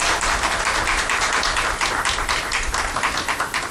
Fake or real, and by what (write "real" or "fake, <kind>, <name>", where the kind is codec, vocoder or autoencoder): real